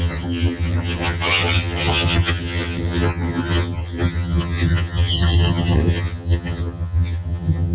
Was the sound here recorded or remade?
remade